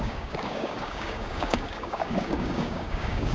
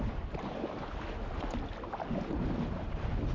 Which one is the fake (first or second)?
first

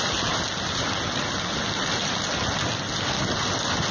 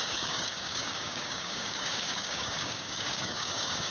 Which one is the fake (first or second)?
second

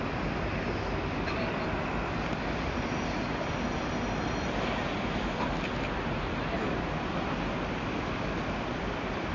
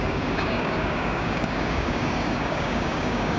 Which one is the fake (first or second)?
second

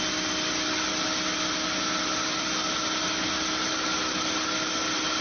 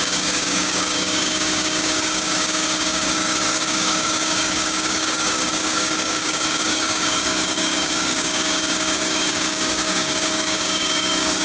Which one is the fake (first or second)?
second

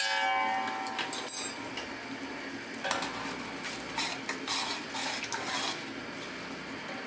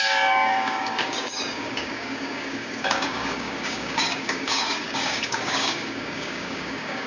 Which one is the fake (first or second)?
second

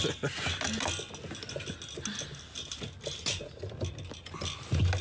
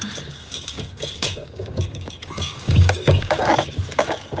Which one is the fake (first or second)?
second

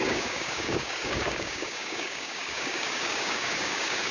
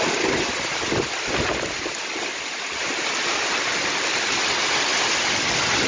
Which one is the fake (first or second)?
first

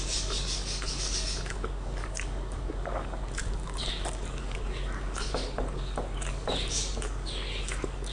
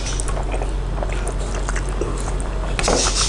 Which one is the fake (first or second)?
first